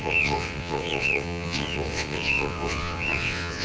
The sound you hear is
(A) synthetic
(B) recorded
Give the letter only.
A